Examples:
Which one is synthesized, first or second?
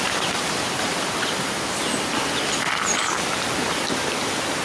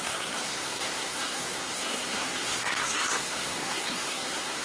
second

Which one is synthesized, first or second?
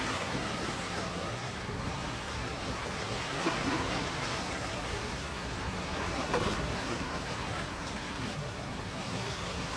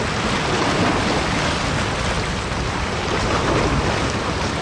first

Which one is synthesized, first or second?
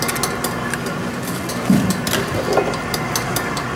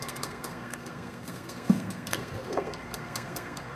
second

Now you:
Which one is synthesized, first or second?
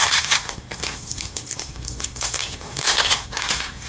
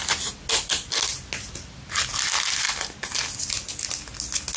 first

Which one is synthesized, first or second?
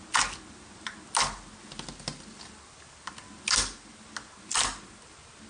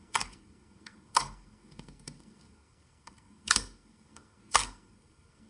second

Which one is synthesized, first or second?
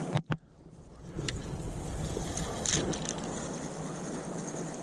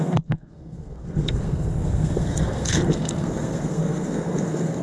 second